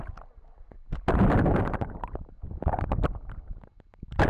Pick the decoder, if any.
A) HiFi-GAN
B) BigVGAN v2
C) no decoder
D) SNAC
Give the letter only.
C